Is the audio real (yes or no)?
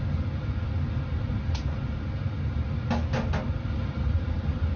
yes